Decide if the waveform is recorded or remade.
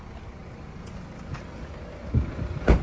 recorded